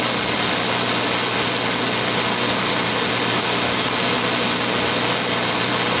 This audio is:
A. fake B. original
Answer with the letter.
B